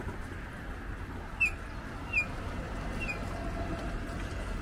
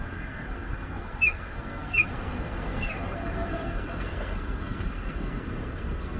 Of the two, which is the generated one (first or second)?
second